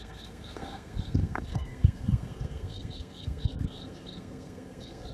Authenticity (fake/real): fake